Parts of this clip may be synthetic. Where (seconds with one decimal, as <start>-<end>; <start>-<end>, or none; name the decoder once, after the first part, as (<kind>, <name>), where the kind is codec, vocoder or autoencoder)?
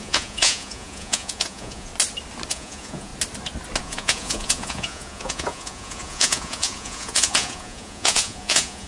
0.0-1.9 (vocoder, Vocos); 2.5-3.1; 3.8-8.9